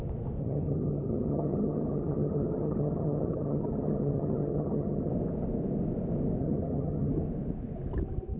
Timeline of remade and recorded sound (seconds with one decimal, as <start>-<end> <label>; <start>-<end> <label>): 0.0-0.4 recorded; 0.4-5.1 remade; 5.1-6.4 recorded; 6.4-7.1 remade; 7.1-8.4 recorded